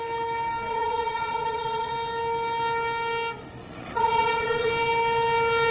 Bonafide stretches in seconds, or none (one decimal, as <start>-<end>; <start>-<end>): 0.0-0.7; 1.9-3.6; 4.7-5.7